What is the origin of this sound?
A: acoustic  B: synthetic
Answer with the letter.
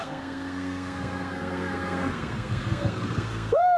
B